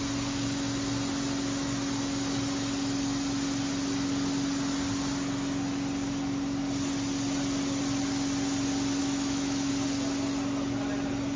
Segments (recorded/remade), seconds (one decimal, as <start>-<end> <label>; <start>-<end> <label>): 0.0-9.0 recorded; 9.0-9.7 remade; 9.7-11.4 recorded